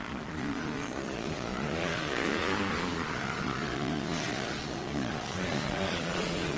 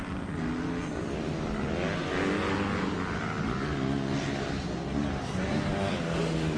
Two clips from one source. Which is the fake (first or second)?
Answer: first